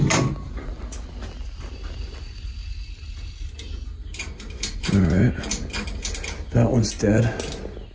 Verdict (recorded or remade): recorded